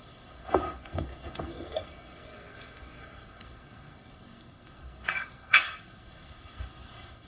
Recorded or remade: remade